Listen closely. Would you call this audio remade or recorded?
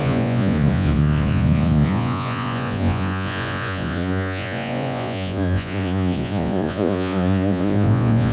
remade